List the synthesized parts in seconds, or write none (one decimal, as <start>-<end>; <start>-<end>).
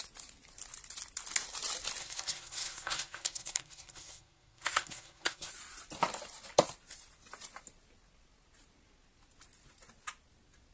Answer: 2.0-5.5